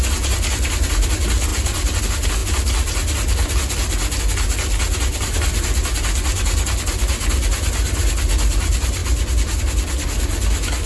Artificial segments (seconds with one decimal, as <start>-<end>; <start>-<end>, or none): 1.5-2.0